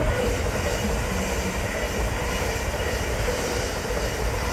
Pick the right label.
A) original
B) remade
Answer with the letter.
A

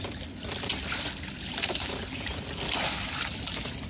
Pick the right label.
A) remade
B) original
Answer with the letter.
B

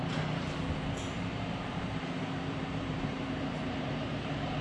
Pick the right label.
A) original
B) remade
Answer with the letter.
B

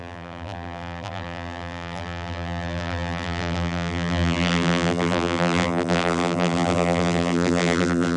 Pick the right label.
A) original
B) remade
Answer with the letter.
B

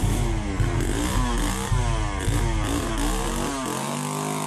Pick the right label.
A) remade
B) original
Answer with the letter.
B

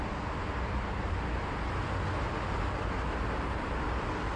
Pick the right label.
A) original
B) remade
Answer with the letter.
A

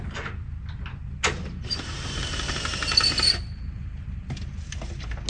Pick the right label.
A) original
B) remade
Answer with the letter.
A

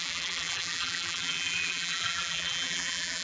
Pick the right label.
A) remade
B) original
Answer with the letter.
A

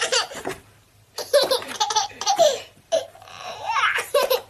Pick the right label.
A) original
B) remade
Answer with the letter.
B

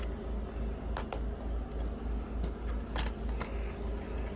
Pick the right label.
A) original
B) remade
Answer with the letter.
A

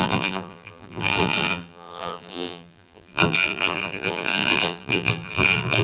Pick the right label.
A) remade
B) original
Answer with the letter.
A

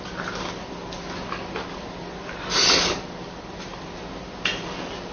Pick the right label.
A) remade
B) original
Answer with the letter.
B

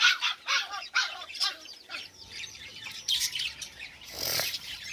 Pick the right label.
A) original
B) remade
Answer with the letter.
B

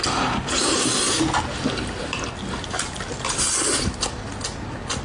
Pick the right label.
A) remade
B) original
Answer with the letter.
B